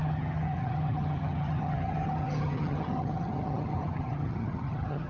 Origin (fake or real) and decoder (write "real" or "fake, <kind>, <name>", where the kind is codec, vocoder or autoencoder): fake, vocoder, HiFi-GAN